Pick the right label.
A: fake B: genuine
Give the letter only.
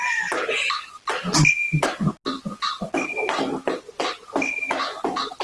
B